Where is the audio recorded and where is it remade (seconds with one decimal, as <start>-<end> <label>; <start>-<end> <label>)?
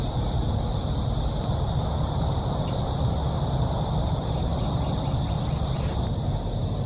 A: 0.0-6.9 recorded